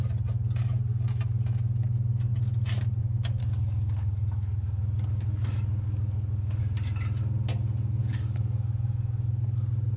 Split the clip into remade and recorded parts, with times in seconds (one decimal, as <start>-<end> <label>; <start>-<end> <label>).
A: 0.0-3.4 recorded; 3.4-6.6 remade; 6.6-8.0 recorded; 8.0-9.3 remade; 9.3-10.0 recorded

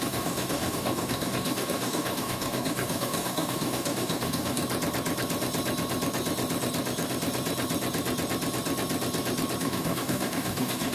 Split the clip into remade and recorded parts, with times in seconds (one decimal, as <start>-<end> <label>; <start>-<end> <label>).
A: 0.0-4.6 remade; 4.6-9.6 recorded; 9.6-10.9 remade

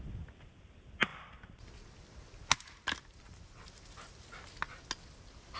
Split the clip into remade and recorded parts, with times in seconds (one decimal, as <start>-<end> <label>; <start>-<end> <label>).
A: 0.0-5.6 recorded

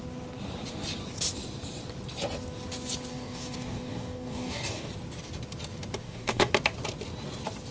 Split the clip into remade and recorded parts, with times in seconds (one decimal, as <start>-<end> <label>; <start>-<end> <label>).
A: 0.0-3.1 recorded; 3.1-4.9 remade; 4.9-6.0 recorded; 6.0-6.5 remade; 6.5-7.7 recorded

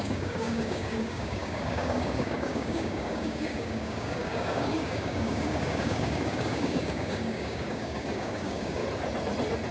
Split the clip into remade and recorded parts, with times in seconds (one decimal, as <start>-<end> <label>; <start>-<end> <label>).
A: 0.0-8.8 remade; 8.8-9.7 recorded

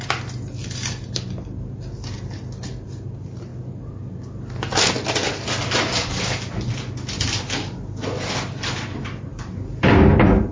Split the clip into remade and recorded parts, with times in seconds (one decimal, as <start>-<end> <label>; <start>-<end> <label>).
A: 0.0-10.5 recorded

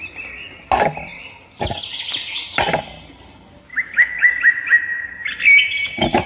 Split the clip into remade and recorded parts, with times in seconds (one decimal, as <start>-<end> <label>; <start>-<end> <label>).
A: 0.0-3.7 recorded; 3.7-4.4 remade; 4.4-6.3 recorded

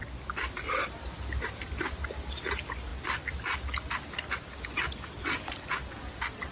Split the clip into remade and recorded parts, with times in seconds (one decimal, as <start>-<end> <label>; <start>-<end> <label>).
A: 0.0-6.5 recorded